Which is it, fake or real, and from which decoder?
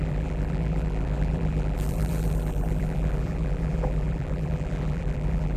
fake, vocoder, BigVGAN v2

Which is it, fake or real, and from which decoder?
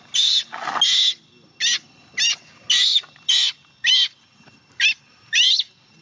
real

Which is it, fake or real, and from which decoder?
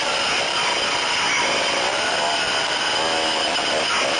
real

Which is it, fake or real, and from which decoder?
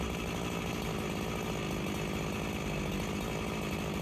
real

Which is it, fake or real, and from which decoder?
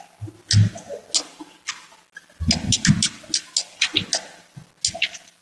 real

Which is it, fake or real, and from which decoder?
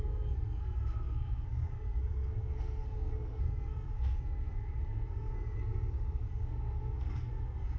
fake, codec, SNAC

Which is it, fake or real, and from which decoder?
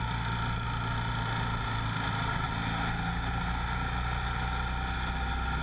real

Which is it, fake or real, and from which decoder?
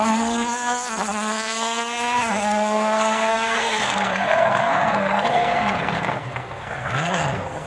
fake, codec, SNAC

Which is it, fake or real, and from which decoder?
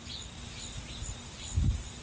real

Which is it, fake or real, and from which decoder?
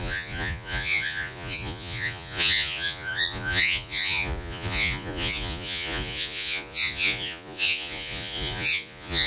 fake, vocoder, Vocos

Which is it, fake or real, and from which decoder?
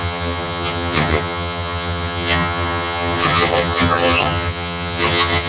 fake, vocoder, HiFi-GAN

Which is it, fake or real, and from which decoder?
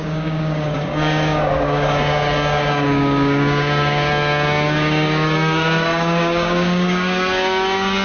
fake, codec, DAC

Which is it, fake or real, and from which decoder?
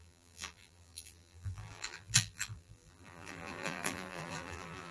fake, vocoder, BigVGAN v2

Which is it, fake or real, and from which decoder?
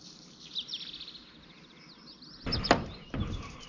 fake, vocoder, BigVGAN v2